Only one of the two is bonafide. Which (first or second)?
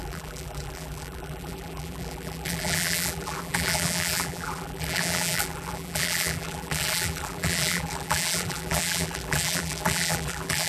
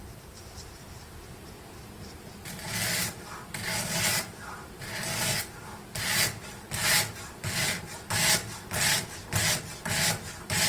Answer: second